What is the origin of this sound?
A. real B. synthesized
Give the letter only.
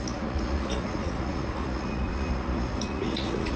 B